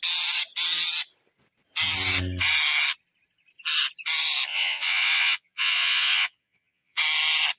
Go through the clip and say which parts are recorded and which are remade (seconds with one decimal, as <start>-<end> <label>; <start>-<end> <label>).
0.0-4.5 recorded; 4.5-7.0 remade; 7.0-7.6 recorded

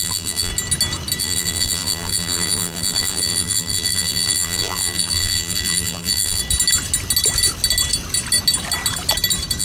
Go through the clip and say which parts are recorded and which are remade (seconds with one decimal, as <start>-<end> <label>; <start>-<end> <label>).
0.0-0.5 remade; 0.5-1.2 recorded; 1.2-6.4 remade; 6.4-9.6 recorded

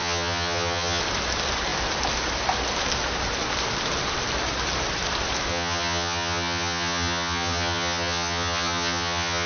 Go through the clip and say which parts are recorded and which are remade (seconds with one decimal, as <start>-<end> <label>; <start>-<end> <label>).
0.0-1.0 remade; 1.0-5.5 recorded; 5.5-9.5 remade

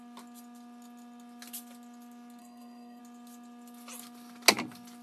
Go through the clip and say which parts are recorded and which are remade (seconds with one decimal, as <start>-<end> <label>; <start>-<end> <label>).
0.0-2.4 recorded; 2.4-3.0 remade; 3.0-5.0 recorded

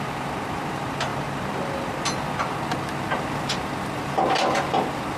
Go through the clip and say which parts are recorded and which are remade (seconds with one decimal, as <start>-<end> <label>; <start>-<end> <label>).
0.0-5.2 recorded

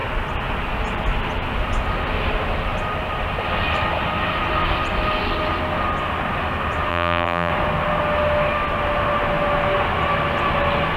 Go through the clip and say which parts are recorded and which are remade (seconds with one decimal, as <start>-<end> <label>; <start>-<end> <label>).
0.0-6.9 recorded; 6.9-7.5 remade; 7.5-11.0 recorded

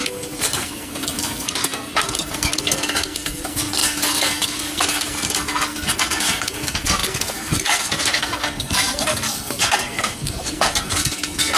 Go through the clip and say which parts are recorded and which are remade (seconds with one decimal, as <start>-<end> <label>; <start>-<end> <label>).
0.0-11.6 remade